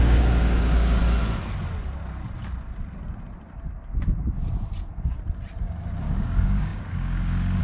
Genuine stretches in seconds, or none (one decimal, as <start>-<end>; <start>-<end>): 1.0-5.6